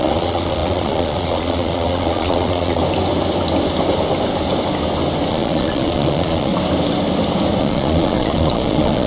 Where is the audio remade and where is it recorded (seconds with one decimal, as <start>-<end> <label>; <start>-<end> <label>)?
0.0-2.8 remade; 2.8-5.3 recorded; 5.3-6.5 remade; 6.5-7.6 recorded; 7.6-9.1 remade